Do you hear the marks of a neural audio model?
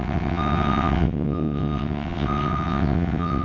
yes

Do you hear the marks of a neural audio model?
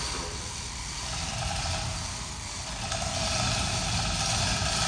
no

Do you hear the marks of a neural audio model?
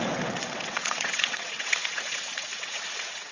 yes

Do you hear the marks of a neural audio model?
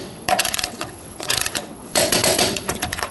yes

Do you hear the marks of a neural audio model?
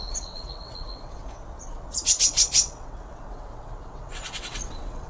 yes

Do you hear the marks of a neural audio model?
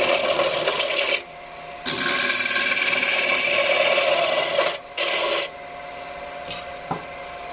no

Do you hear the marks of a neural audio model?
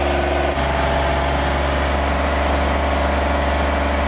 no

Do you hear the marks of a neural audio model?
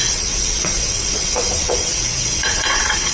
yes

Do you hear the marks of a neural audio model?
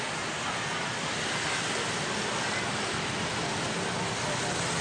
no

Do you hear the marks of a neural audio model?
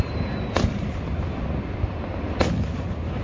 no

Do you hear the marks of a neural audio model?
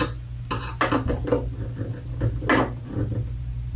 no